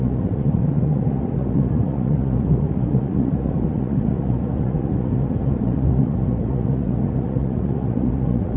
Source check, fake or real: fake